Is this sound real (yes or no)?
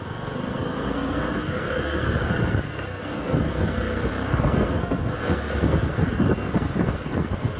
no